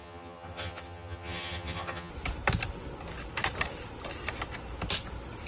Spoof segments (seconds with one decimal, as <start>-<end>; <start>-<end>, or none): 0.0-2.1